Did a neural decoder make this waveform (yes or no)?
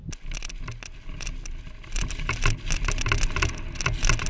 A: no